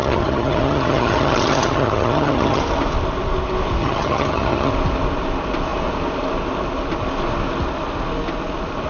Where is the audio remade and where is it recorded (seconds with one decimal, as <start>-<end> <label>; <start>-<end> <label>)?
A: 0.0-2.6 remade; 2.6-3.8 recorded; 3.8-4.7 remade; 4.7-8.9 recorded